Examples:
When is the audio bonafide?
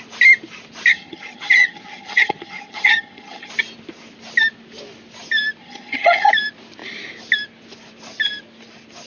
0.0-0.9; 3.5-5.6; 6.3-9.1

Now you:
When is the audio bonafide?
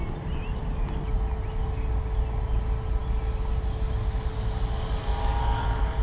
0.0-6.0